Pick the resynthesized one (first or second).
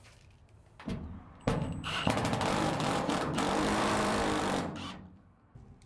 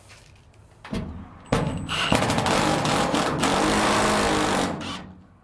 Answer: first